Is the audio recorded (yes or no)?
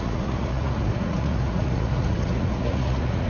no